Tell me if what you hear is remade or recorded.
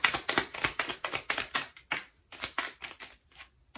recorded